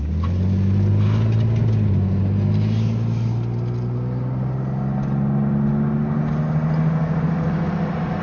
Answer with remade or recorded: recorded